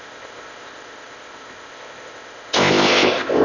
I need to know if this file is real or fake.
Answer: fake